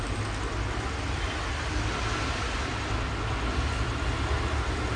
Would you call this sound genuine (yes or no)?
yes